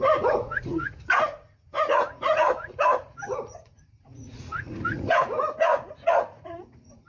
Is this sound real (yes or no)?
no